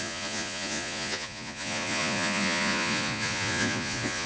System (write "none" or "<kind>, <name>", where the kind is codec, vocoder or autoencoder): vocoder, Vocos